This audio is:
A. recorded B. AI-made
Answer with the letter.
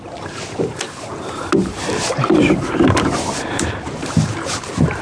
B